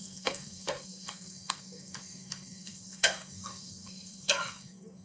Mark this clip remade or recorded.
remade